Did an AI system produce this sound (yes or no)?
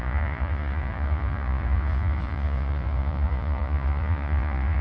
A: yes